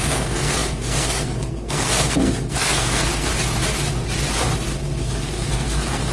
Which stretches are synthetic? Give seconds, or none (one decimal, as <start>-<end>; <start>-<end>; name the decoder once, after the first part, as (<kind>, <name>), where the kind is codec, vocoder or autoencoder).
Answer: 0.0-3.3 (codec, SNAC); 5.0-6.1